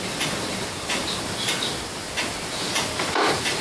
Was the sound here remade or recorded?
recorded